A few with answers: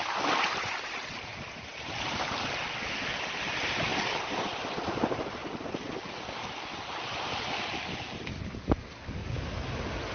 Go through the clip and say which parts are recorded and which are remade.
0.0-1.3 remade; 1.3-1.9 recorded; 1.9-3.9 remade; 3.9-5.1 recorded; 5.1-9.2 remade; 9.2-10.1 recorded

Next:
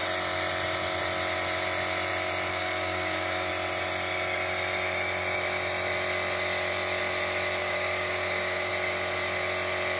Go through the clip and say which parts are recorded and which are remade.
0.0-2.5 recorded; 2.5-3.5 remade; 3.5-7.6 recorded; 7.6-8.7 remade; 8.7-10.0 recorded

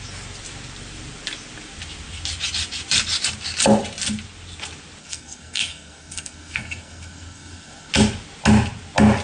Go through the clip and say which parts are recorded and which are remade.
0.0-5.0 recorded; 5.0-7.9 remade; 7.9-9.2 recorded

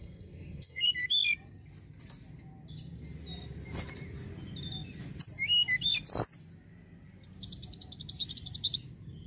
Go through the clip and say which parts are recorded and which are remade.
0.0-0.8 remade; 0.8-9.3 recorded

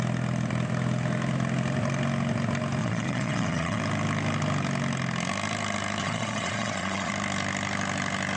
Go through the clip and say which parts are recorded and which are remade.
0.0-2.8 recorded; 2.8-3.8 remade; 3.8-6.0 recorded; 6.0-7.1 remade; 7.1-8.4 recorded

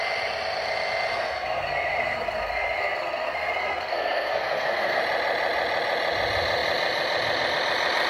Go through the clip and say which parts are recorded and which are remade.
0.0-1.1 recorded; 1.1-5.0 remade; 5.0-8.1 recorded

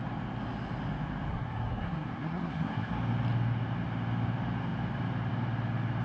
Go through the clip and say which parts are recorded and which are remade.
0.0-1.3 recorded; 1.3-2.9 remade; 2.9-6.0 recorded

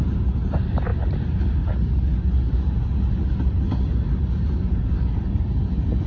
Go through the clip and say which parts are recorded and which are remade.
0.0-6.1 recorded